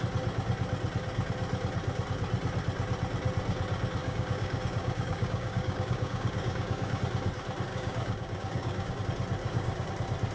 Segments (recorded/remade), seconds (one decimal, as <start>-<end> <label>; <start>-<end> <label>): 0.0-4.0 recorded; 4.0-7.0 remade; 7.0-7.7 recorded; 7.7-9.0 remade; 9.0-9.4 recorded; 9.4-9.9 remade; 9.9-10.3 recorded